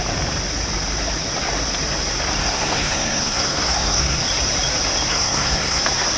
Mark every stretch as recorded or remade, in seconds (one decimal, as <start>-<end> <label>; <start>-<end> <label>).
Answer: 0.0-2.4 recorded; 2.4-4.2 remade; 4.2-5.1 recorded; 5.1-5.8 remade; 5.8-6.2 recorded